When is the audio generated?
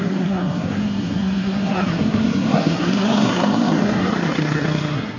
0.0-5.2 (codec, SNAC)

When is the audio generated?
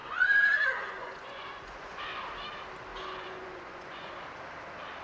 0.0-2.0 (vocoder, Vocos); 2.9-4.1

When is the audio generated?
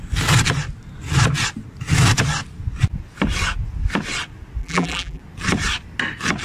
4.6-5.2 (vocoder, BigVGAN v2)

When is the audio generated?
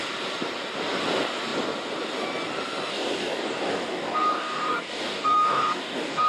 2.9-6.3 (codec, DAC)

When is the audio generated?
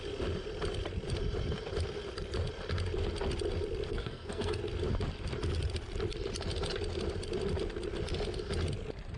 3.9-4.6 (codec, SNAC)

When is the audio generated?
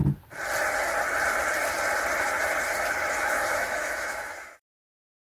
3.2-5.3 (autoencoder, DAC-VAE)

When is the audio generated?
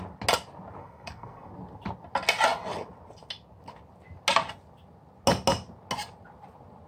0.8-1.5 (codec, SNAC)